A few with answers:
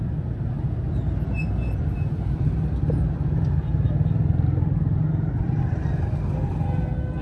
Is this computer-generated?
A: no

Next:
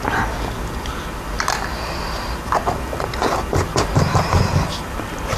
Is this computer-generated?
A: no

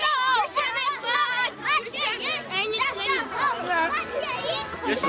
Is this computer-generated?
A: no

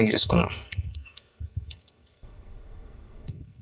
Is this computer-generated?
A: yes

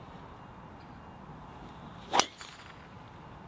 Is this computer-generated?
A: no